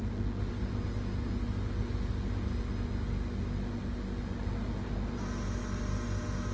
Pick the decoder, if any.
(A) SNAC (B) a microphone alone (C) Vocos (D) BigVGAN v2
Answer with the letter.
B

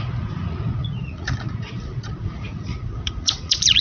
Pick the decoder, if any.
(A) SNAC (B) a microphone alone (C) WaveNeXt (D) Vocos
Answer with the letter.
D